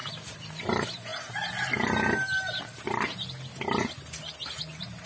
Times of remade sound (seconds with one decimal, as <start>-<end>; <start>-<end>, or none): 0.0-0.6